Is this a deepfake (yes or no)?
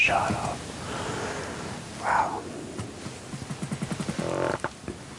no